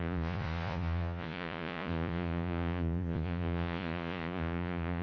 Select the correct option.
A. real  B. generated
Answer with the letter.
B